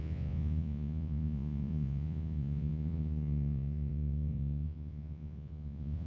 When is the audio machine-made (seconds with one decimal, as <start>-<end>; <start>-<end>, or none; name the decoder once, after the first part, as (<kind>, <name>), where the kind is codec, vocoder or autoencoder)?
0.0-6.1 (vocoder, Vocos)